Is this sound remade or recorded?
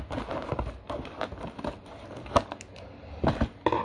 recorded